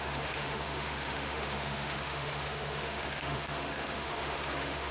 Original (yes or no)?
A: no